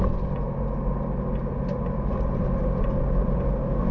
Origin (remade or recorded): recorded